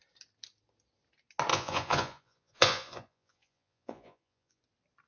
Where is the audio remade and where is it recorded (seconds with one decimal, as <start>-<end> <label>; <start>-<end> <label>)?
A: 0.0-1.5 recorded; 1.5-4.6 remade; 4.6-5.1 recorded